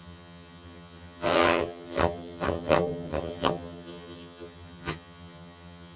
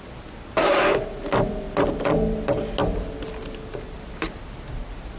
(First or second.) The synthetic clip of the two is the first